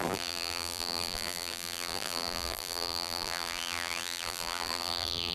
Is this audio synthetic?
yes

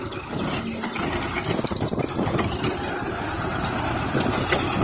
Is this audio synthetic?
yes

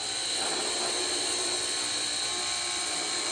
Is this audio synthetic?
no